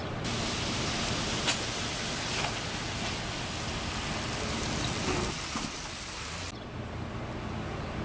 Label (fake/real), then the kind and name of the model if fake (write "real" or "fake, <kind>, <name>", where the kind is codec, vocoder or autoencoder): real